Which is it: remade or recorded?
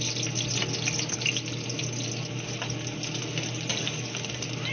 recorded